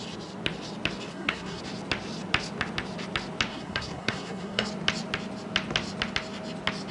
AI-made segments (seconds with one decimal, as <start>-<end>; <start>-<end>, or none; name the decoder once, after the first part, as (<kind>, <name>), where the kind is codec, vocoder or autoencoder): 1.1-1.6 (codec, SNAC); 3.5-4.7